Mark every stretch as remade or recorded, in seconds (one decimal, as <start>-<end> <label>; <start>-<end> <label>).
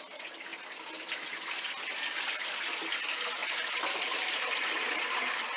0.0-3.4 recorded; 3.4-5.6 remade